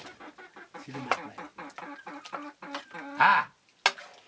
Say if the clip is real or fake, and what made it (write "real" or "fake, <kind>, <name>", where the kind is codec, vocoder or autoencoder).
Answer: real